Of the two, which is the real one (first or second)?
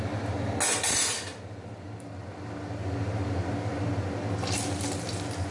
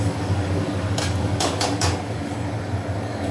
first